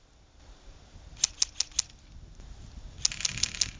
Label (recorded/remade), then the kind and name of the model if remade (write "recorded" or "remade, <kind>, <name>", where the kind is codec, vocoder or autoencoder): recorded